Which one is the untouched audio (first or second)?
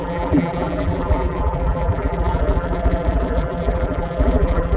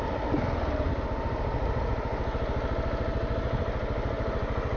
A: second